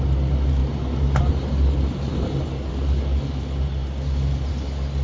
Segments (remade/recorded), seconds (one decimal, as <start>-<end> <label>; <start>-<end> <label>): 0.0-5.0 recorded